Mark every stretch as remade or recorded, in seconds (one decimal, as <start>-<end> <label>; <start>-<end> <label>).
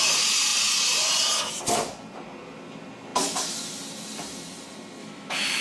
0.0-5.0 recorded; 5.0-5.6 remade